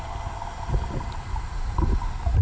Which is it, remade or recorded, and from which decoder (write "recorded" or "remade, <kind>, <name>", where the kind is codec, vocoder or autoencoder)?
recorded